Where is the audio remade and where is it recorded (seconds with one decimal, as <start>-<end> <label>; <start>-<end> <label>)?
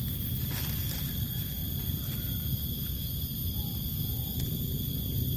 0.0-5.4 recorded